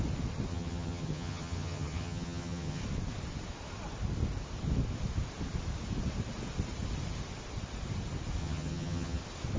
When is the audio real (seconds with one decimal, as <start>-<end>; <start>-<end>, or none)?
0.0-0.5; 2.8-8.4; 9.2-9.6